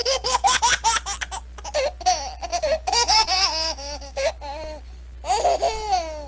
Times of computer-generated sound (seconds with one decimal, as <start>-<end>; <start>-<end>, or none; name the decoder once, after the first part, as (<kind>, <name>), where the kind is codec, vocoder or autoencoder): 0.0-0.6 (codec, DAC); 2.5-4.3